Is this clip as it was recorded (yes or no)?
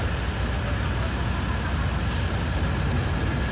yes